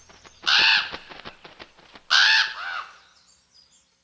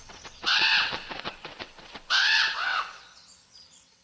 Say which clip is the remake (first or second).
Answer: second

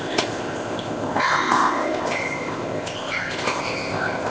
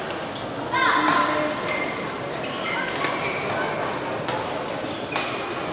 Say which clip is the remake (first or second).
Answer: first